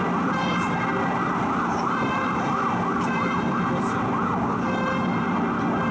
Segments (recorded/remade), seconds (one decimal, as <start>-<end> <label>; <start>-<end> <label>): 0.0-5.9 recorded